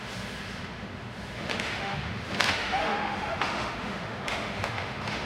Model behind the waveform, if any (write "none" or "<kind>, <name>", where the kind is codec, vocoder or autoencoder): autoencoder, DAC-VAE